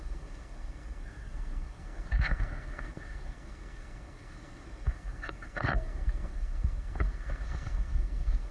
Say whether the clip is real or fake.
fake